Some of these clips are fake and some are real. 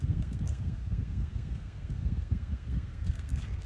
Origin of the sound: fake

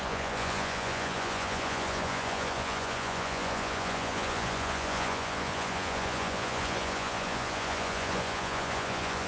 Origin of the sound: fake